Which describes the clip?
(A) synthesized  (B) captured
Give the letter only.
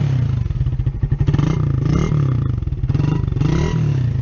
B